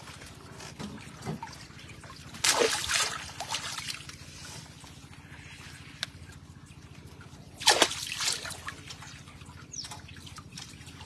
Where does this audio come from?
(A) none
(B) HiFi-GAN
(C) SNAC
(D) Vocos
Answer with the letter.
A